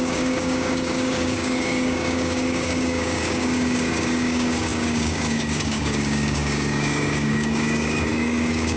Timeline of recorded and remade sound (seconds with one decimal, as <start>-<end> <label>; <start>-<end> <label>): 0.0-8.8 remade